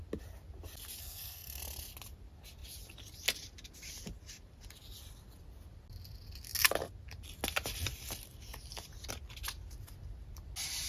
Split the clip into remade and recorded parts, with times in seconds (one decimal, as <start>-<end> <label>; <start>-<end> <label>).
0.0-1.0 recorded; 1.0-1.6 remade; 1.6-10.9 recorded